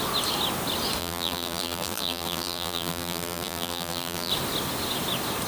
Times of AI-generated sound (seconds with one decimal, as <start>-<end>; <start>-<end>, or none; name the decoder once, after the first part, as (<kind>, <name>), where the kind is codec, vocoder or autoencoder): 1.0-4.3 (vocoder, BigVGAN v2)